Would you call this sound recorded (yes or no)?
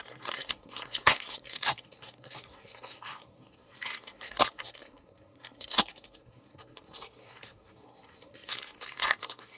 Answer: no